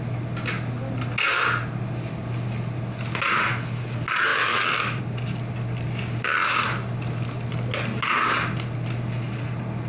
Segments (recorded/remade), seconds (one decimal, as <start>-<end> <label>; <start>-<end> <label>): 0.0-4.3 recorded; 4.3-5.0 remade; 5.0-9.9 recorded